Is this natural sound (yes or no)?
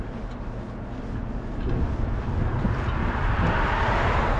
yes